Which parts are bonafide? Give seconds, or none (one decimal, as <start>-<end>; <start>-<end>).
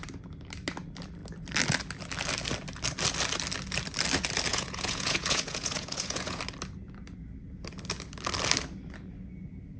0.0-4.5; 6.4-9.8